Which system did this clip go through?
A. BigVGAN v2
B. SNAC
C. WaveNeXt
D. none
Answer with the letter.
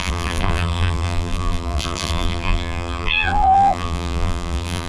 A